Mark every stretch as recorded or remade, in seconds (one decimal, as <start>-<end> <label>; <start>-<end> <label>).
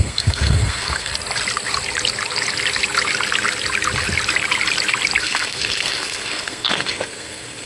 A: 0.0-1.1 remade; 1.1-5.2 recorded; 5.2-7.7 remade